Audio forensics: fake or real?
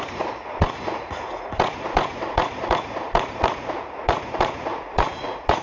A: fake